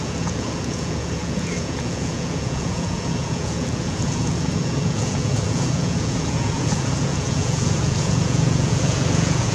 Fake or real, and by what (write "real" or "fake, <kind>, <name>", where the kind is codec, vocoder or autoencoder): fake, vocoder, Vocos